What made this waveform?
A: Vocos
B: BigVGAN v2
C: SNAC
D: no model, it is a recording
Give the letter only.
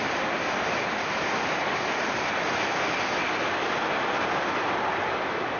D